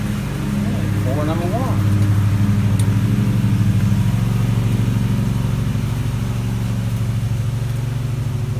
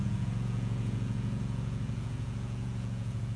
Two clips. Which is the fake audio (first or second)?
second